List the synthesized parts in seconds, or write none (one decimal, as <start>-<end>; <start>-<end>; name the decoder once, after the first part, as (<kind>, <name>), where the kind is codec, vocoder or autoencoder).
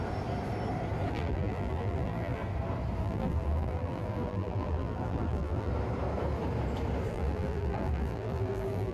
1.1-2.4 (vocoder, BigVGAN v2); 3.0-5.7; 7.1-8.9